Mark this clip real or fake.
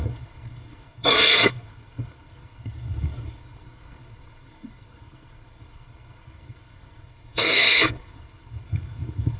fake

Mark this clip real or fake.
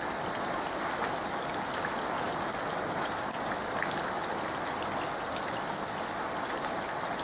real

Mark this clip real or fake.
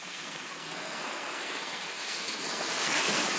fake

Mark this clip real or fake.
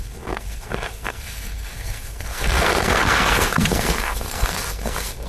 fake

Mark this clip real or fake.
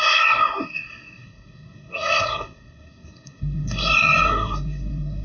fake